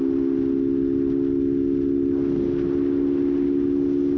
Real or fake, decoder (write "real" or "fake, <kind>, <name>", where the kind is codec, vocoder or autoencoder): real